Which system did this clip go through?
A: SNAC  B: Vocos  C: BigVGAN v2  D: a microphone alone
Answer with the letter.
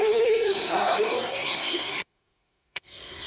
A